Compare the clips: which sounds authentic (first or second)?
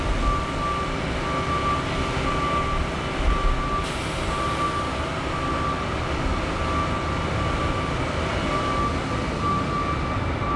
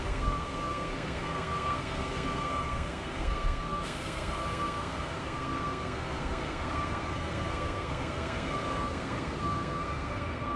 first